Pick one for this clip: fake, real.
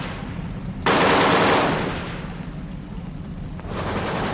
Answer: real